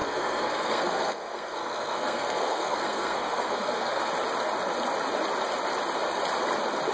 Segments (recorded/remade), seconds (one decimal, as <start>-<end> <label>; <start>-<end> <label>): 0.0-4.1 remade; 4.1-6.9 recorded